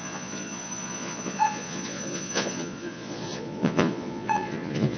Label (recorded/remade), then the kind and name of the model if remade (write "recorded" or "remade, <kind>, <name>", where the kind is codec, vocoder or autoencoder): remade, vocoder, Vocos